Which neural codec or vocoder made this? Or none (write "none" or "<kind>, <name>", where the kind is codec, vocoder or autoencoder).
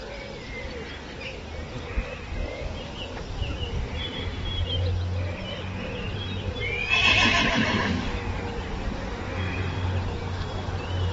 none